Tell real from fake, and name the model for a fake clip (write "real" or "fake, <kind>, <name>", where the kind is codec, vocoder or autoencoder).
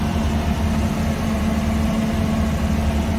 real